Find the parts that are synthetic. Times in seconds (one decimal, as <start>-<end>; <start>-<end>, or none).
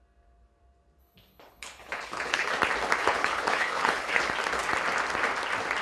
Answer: 1.0-2.5; 3.0-4.2